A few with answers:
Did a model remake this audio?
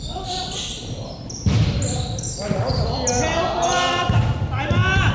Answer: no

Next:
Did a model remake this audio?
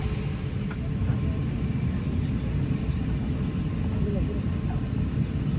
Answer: no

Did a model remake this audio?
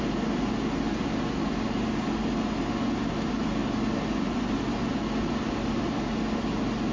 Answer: no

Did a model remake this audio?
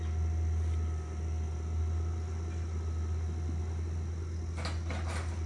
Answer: no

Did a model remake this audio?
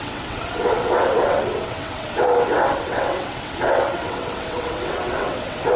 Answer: yes